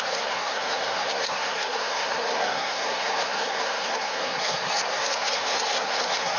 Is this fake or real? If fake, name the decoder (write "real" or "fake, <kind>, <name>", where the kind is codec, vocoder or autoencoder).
fake, codec, SNAC